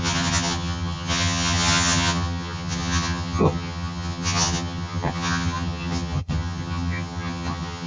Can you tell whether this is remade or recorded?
remade